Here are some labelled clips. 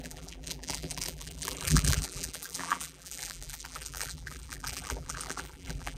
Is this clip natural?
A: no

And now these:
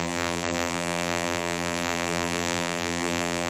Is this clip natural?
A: no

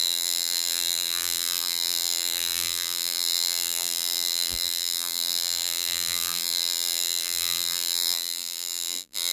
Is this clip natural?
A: no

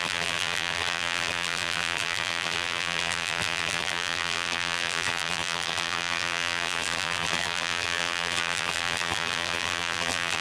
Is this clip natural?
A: no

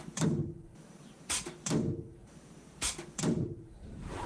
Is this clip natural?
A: no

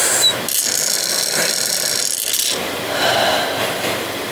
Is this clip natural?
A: yes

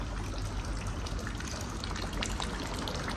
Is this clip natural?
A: yes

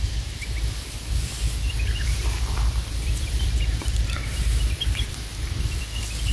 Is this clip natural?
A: no